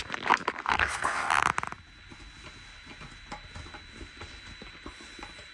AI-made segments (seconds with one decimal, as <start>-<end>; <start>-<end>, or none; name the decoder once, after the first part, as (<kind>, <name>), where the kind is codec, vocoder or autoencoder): 0.6-1.3 (codec, SNAC)